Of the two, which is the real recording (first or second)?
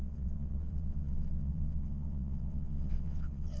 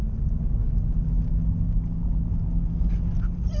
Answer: second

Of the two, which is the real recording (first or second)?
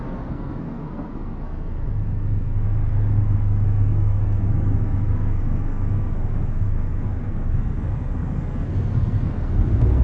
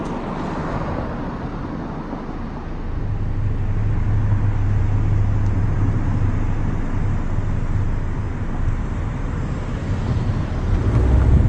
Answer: second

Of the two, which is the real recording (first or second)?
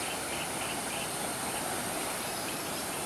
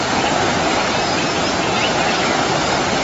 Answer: second